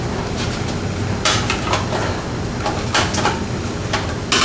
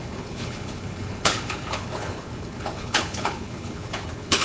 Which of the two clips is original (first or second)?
first